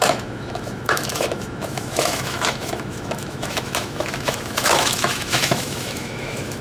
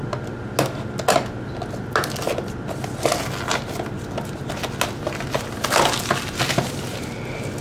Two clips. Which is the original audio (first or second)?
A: second